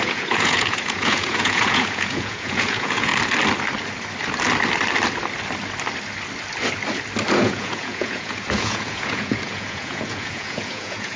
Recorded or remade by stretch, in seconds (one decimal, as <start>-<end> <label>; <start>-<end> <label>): 0.0-3.1 remade; 3.1-7.3 recorded; 7.3-11.2 remade